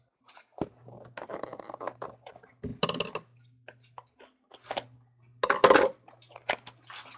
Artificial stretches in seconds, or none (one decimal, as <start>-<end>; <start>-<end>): none